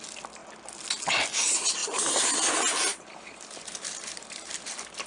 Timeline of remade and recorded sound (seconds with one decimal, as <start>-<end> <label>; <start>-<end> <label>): 0.0-1.8 recorded; 1.8-5.1 remade